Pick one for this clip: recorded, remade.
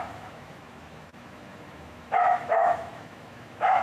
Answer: remade